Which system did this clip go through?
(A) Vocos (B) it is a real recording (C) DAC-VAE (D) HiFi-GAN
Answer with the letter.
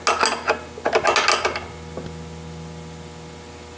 B